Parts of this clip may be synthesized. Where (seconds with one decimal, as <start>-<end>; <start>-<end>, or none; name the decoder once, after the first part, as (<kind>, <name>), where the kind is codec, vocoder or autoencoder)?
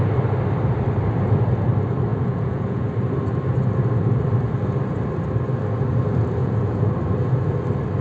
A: 2.1-2.9 (vocoder, Vocos); 6.4-6.9